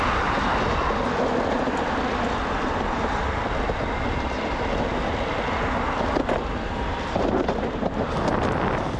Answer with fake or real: real